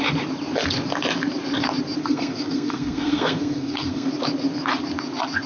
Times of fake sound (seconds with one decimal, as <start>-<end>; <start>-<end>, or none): 2.0-4.1